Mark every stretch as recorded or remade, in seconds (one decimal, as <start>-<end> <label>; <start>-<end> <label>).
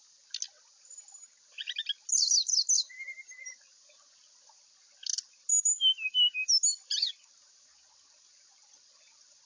0.0-5.5 recorded; 5.5-6.5 remade; 6.5-9.5 recorded